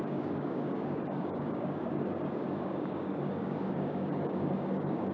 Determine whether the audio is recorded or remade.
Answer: remade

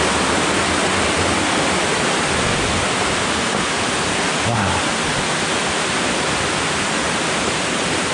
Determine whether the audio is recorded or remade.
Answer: recorded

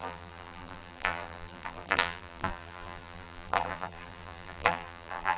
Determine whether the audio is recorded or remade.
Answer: remade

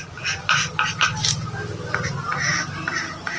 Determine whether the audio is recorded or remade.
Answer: recorded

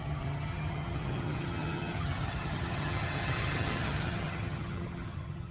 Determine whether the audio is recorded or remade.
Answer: remade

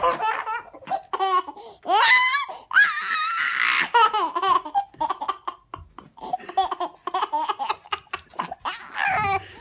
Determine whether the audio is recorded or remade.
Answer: recorded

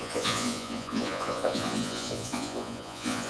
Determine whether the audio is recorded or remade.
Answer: remade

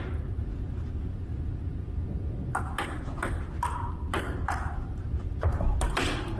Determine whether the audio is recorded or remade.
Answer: recorded